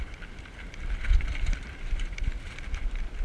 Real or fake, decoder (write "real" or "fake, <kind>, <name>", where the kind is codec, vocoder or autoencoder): fake, vocoder, BigVGAN v2